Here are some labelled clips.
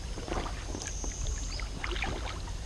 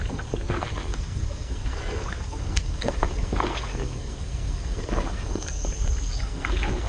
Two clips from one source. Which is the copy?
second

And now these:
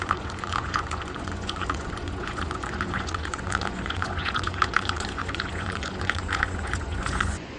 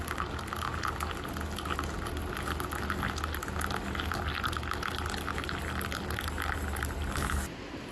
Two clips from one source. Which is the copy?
first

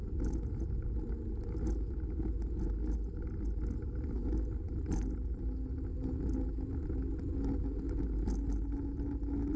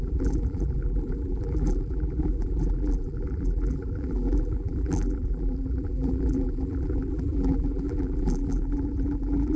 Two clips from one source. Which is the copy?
second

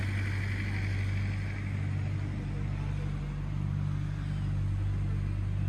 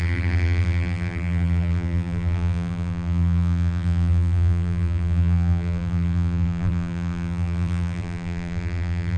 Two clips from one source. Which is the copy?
second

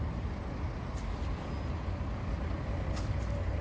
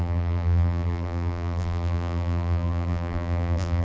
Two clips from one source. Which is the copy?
second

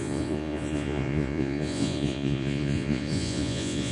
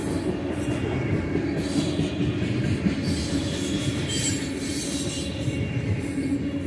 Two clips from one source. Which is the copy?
first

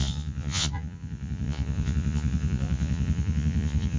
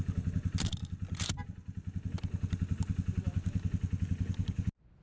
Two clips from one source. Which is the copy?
first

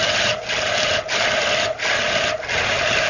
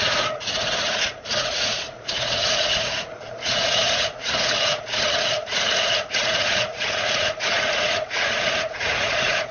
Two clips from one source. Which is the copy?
second